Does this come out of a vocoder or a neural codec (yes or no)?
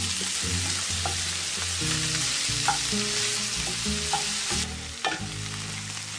no